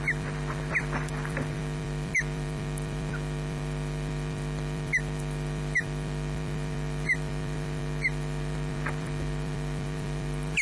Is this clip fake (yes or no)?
yes